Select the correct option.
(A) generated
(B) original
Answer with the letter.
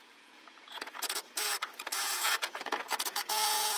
A